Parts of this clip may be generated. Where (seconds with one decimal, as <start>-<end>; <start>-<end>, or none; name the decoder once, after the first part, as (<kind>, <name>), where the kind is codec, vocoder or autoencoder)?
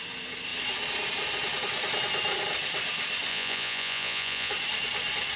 3.3-4.5 (vocoder, Vocos)